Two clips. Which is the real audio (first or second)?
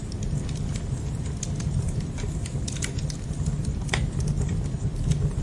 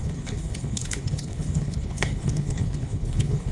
first